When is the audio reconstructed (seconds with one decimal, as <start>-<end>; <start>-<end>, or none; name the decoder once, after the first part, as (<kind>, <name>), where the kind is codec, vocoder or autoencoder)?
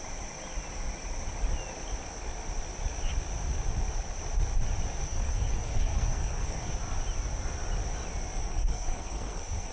5.0-6.7 (codec, SNAC); 8.4-9.7